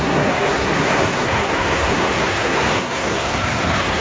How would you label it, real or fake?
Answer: fake